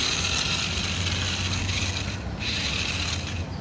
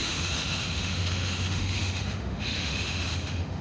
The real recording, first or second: first